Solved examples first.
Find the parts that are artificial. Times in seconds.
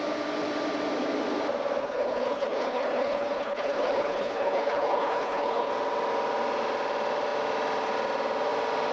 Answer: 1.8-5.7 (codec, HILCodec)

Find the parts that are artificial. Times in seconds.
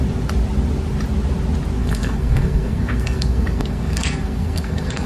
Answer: 1.8-5.1 (codec, SNAC)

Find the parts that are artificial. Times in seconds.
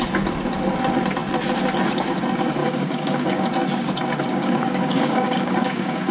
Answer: 2.6-3.5 (codec, DAC); 4.3-6.1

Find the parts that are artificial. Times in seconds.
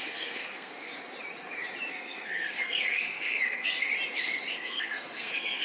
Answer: 0.0-0.9 (codec, SNAC); 1.9-3.9; 4.5-5.6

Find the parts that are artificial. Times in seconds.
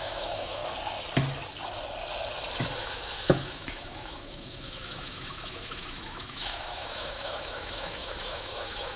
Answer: 0.0-0.6 (autoencoder, DAC-VAE); 2.8-9.0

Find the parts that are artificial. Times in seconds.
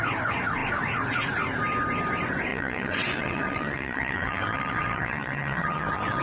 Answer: 2.5-6.2 (vocoder, WaveNeXt)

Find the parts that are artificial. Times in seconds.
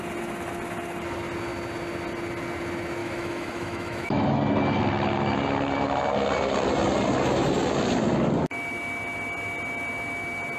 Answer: 3.0-4.4 (autoencoder, DAC-VAE)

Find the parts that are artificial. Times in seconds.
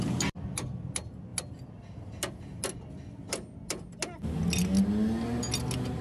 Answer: none